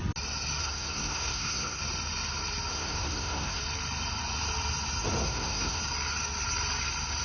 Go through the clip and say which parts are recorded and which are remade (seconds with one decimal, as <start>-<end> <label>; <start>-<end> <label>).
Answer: 0.0-0.6 recorded; 0.6-1.8 remade; 1.8-2.7 recorded; 2.7-3.6 remade; 3.6-5.2 recorded; 5.2-5.8 remade; 5.8-7.2 recorded